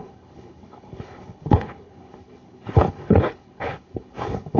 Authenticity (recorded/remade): remade